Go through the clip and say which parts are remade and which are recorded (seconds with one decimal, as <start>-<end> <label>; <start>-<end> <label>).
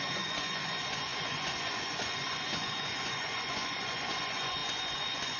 0.0-5.4 remade